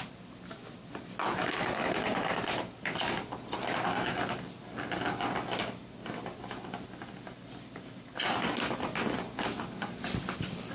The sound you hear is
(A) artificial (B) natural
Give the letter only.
B